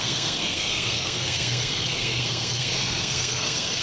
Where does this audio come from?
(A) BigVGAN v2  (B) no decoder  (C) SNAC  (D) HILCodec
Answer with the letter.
C